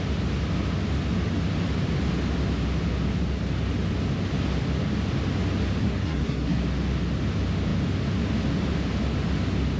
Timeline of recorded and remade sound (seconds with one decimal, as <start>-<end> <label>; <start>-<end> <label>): 0.0-5.8 recorded; 5.8-6.6 remade; 6.6-9.8 recorded